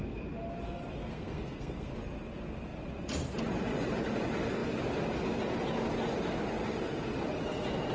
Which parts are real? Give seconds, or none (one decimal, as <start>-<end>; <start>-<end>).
0.0-1.0; 1.9-7.9